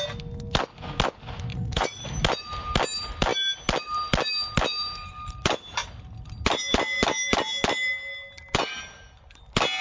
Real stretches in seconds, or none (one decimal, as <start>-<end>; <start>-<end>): 0.0-1.5; 2.1-9.8